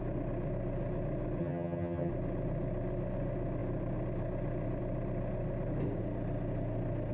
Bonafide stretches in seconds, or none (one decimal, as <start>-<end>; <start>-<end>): 0.0-1.4; 2.1-7.1